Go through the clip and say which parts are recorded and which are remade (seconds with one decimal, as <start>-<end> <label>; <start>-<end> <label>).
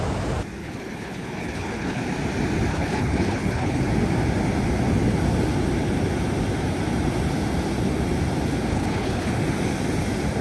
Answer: 0.0-0.6 recorded; 0.6-2.0 remade; 2.0-2.7 recorded; 2.7-3.8 remade; 3.8-8.7 recorded; 8.7-9.3 remade; 9.3-10.4 recorded